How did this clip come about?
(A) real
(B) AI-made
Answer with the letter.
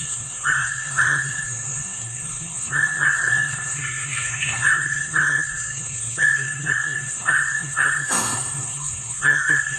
B